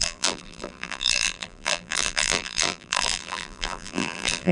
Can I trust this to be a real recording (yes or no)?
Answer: no